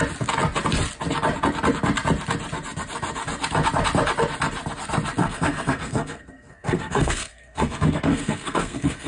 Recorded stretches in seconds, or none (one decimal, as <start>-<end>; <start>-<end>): 0.0-5.2